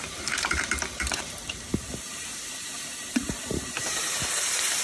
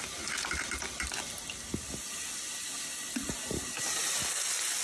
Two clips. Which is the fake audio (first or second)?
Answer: first